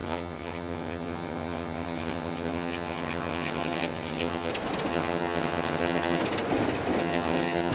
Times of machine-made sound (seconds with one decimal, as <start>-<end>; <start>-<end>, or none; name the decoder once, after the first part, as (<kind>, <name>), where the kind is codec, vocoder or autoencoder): 0.0-4.5 (vocoder, HiFi-GAN); 4.9-6.2; 7.0-7.7